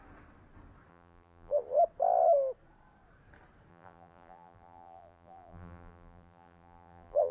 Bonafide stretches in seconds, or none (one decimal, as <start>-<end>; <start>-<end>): 0.0-0.9; 1.6-3.7